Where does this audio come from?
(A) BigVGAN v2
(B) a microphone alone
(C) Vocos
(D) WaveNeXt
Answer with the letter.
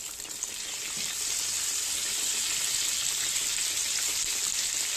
B